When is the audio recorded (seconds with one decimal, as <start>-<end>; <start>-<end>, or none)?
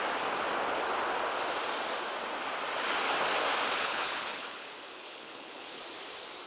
0.0-3.8; 5.8-6.5